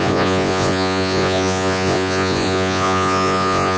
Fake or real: fake